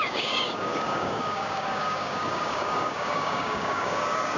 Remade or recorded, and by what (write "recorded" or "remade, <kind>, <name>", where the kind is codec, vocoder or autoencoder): remade, codec, DAC